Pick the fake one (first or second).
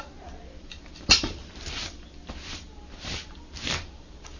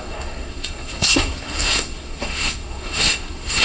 second